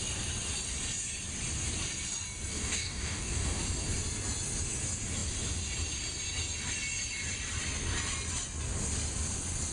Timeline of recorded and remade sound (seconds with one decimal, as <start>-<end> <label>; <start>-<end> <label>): 0.0-2.5 recorded; 2.5-3.6 remade; 3.6-9.7 recorded